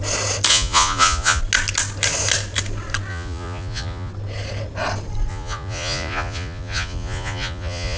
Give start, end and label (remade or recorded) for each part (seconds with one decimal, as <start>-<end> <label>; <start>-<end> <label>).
0.0-0.5 recorded; 0.5-1.4 remade; 1.4-3.1 recorded; 3.1-4.1 remade; 4.1-5.3 recorded; 5.3-8.0 remade